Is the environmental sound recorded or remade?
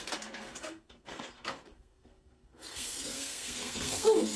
remade